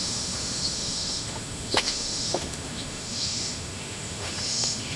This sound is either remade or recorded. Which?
remade